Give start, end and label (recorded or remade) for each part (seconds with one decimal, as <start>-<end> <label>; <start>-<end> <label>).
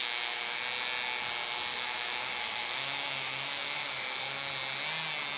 0.0-0.6 remade; 0.6-1.7 recorded; 1.7-4.5 remade; 4.5-5.4 recorded